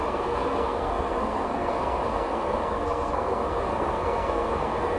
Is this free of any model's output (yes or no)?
no